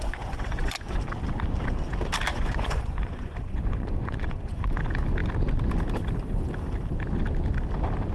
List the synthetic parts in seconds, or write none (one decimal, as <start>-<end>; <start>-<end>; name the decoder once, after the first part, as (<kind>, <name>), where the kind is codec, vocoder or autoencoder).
0.0-1.0 (vocoder, Vocos); 2.3-4.7